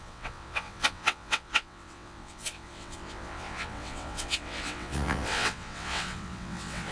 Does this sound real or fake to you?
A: fake